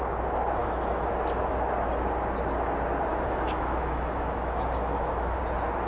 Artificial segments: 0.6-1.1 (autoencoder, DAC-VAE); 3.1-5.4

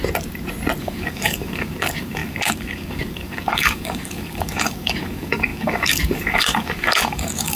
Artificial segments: 0.8-7.6 (codec, DAC)

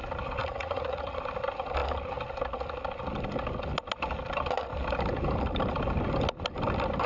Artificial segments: 0.4-1.2 (vocoder, Vocos)

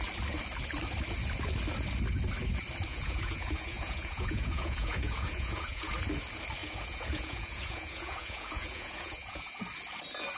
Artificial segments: 2.9-5.9 (vocoder, Vocos); 6.6-9.6